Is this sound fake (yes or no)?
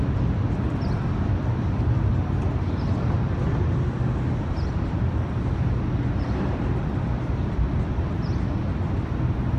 no